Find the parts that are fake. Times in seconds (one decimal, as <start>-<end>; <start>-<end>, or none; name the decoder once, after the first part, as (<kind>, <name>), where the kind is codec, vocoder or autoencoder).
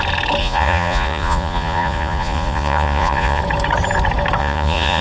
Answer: 0.4-3.4 (vocoder, Vocos); 4.4-5.0